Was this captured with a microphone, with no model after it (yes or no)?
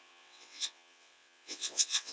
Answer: no